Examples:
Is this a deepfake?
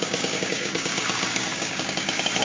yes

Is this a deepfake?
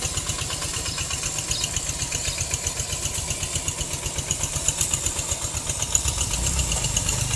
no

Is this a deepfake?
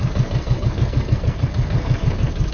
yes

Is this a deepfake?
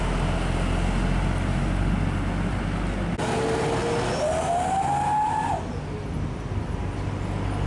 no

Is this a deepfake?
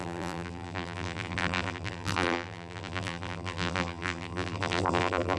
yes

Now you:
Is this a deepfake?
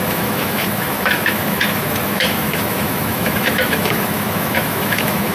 yes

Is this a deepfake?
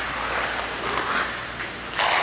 no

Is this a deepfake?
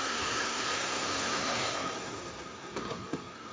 yes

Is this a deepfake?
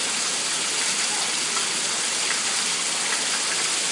no